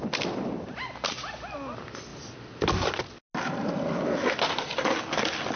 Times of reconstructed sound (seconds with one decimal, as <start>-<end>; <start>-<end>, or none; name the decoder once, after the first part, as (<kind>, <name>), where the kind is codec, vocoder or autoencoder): none